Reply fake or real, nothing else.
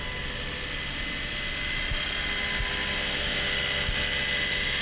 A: real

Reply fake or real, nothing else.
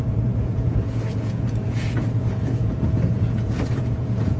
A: fake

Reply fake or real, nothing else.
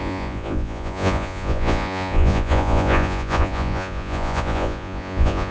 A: fake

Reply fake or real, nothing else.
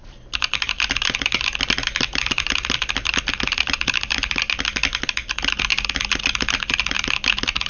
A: real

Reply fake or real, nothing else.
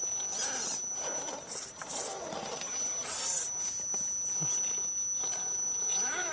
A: real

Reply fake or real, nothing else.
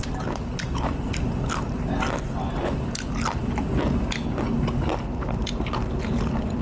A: real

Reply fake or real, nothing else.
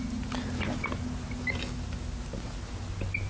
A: real